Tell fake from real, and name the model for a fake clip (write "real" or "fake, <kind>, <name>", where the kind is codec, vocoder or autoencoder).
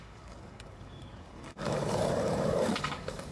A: fake, codec, DAC